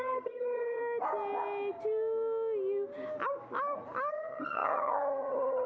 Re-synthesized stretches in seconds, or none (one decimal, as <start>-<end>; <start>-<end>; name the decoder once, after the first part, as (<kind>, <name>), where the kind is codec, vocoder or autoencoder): 0.0-0.8 (vocoder, HiFi-GAN); 4.1-5.7